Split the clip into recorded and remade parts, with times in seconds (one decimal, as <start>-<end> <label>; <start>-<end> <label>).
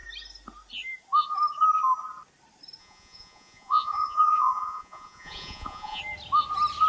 0.0-2.8 recorded; 2.8-6.0 remade; 6.0-6.9 recorded